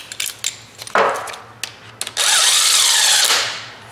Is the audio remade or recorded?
recorded